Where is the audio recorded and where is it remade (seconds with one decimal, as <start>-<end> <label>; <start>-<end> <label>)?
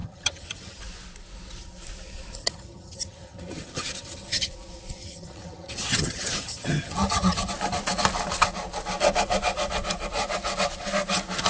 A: 0.0-0.8 remade; 0.8-2.4 recorded; 2.4-4.5 remade; 4.5-5.0 recorded; 5.0-7.5 remade; 7.5-11.5 recorded